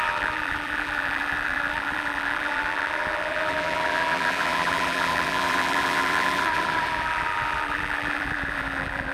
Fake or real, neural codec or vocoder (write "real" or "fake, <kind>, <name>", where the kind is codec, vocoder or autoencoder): fake, vocoder, BigVGAN v2